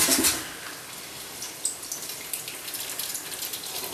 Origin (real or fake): real